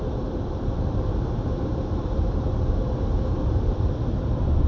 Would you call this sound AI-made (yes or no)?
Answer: yes